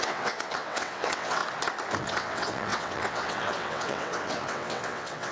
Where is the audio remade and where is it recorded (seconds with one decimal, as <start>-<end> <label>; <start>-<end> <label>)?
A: 0.0-1.4 remade; 1.4-2.0 recorded; 2.0-5.3 remade

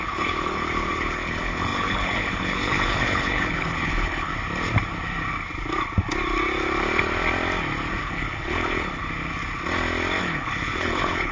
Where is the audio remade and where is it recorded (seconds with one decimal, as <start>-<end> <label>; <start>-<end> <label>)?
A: 0.0-4.3 remade; 4.3-8.0 recorded; 8.0-9.0 remade; 9.0-10.2 recorded; 10.2-11.3 remade

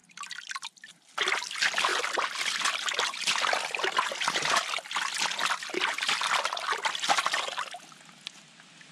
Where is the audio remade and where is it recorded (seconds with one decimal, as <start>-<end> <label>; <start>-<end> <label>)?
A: 0.0-0.9 remade; 0.9-1.9 recorded; 1.9-2.6 remade; 2.6-8.9 recorded

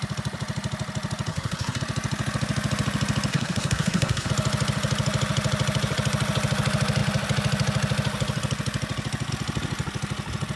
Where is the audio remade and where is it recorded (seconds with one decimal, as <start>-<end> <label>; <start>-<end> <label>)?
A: 0.0-1.3 recorded; 1.3-1.8 remade; 1.8-3.3 recorded; 3.3-4.3 remade; 4.3-10.6 recorded

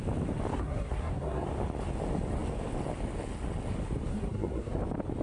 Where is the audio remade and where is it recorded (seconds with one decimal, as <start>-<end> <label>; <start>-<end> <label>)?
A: 0.0-0.5 recorded; 0.5-1.5 remade; 1.5-4.1 recorded; 4.1-4.8 remade; 4.8-5.2 recorded

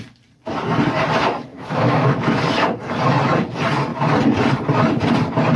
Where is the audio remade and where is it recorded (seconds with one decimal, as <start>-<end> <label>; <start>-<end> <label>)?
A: 0.0-1.5 recorded; 1.5-2.4 remade; 2.4-5.6 recorded